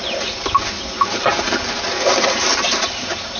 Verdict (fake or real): real